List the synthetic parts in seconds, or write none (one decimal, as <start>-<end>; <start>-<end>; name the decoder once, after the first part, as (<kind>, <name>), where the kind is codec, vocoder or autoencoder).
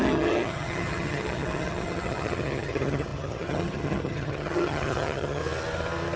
0.0-5.4 (vocoder, HiFi-GAN)